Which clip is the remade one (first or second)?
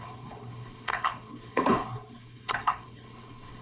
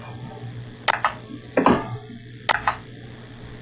first